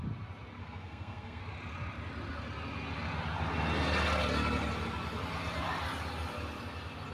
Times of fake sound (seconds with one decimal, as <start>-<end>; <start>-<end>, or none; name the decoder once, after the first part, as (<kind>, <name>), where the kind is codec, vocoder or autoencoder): 0.6-1.4 (codec, SNAC)